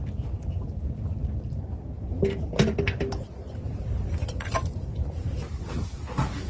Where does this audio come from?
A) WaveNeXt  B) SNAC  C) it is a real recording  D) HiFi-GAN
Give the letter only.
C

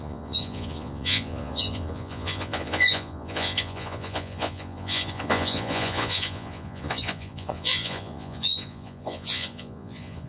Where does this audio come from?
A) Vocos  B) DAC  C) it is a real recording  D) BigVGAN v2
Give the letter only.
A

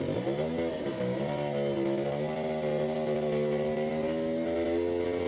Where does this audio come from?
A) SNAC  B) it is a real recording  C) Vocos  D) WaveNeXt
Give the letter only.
B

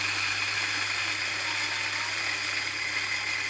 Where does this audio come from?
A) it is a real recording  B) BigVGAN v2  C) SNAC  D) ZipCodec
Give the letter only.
A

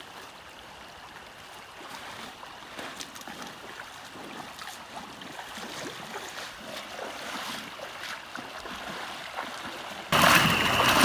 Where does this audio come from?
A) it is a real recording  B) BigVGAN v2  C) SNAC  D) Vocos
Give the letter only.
A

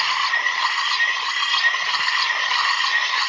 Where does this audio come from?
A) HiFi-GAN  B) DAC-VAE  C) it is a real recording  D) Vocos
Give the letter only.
C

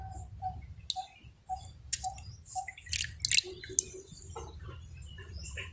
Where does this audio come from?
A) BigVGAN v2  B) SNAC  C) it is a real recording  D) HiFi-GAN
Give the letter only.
C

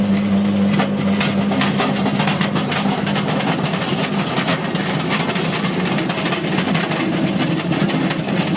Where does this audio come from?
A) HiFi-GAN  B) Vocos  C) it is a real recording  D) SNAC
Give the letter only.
C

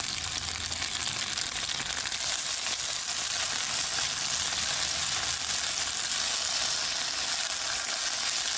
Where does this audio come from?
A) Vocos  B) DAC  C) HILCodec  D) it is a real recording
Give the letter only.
D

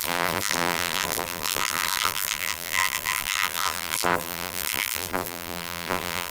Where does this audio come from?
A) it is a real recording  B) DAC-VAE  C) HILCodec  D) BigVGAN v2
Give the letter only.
D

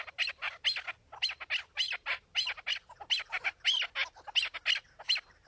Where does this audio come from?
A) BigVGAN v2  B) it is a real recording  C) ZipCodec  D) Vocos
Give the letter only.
B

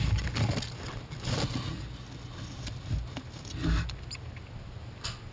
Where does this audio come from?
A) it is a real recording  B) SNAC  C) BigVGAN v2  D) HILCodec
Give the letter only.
A